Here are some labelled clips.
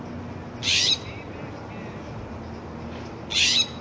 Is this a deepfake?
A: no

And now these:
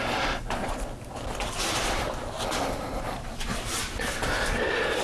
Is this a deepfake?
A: no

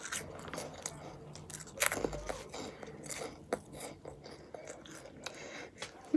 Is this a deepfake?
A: no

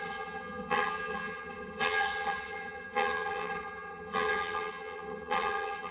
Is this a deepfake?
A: yes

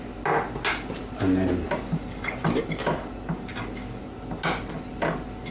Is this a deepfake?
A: no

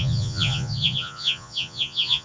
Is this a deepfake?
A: yes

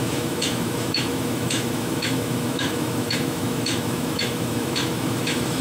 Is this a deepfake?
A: yes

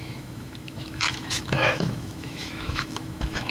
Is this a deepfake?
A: yes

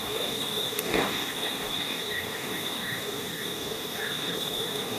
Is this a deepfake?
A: yes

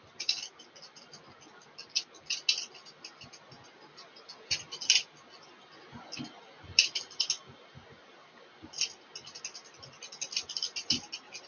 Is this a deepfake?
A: no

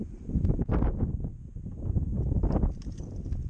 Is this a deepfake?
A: no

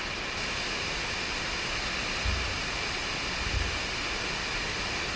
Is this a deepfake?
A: no